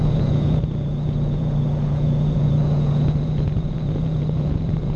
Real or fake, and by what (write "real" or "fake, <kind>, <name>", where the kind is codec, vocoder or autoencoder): fake, vocoder, Vocos